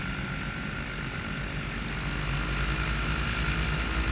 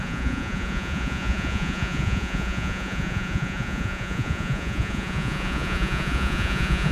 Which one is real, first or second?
first